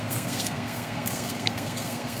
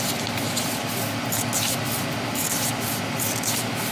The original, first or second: second